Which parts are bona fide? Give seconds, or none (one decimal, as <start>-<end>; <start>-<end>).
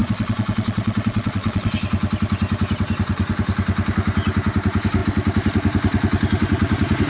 1.7-7.1